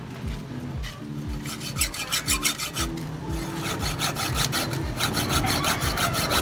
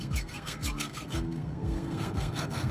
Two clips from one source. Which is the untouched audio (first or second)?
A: first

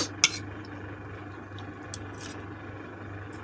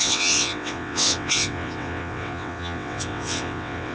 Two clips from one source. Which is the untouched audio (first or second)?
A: first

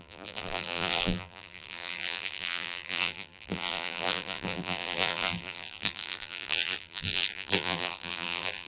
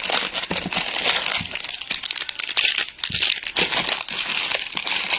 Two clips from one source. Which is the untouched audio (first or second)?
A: second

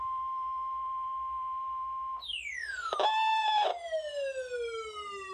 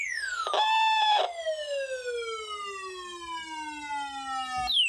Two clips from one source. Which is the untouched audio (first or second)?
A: second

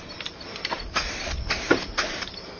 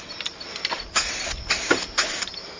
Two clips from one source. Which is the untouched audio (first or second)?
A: second